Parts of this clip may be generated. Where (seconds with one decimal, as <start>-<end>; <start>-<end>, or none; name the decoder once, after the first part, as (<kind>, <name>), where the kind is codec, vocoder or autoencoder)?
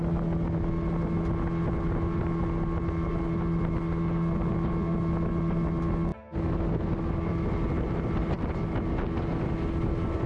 none